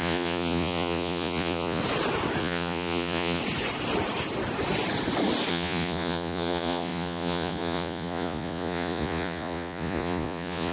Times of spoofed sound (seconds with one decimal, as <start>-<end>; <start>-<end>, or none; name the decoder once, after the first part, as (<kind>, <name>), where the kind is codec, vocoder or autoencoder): 0.0-1.8 (vocoder, Vocos); 2.4-3.4; 5.5-10.7

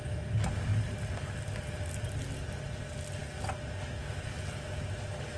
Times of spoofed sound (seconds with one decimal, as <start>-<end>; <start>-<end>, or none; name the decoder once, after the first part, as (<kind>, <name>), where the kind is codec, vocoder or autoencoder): none

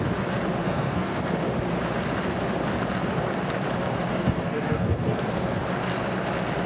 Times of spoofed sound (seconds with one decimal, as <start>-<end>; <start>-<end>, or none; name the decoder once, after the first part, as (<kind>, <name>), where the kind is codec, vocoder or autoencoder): 0.6-1.2 (codec, SNAC); 4.1-5.3

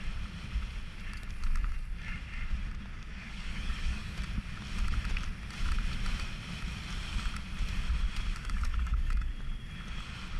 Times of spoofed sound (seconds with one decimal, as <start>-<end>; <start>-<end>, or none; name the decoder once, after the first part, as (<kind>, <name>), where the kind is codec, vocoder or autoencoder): 3.1-4.2 (codec, DAC); 8.4-9.3

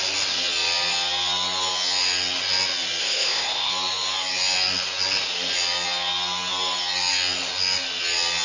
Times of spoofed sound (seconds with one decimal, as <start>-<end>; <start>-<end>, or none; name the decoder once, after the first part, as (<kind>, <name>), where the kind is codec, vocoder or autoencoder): 3.0-3.7 (codec, ZipCodec)

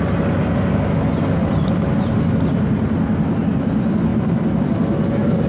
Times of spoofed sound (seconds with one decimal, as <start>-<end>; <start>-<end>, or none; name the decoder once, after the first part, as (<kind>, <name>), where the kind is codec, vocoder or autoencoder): 1.4-2.3 (vocoder, BigVGAN v2)

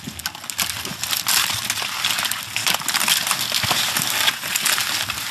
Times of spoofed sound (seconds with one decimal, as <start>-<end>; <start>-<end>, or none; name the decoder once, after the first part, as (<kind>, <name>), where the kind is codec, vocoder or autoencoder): none